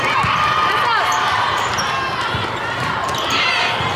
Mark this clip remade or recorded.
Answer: recorded